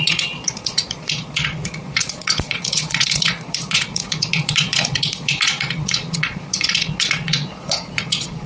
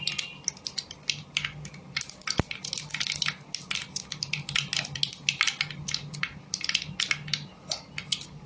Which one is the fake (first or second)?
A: first